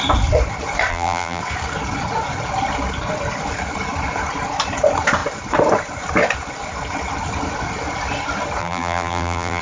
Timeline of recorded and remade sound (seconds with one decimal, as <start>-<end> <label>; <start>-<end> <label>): 0.0-0.9 recorded; 0.9-1.4 remade; 1.4-8.6 recorded; 8.6-9.6 remade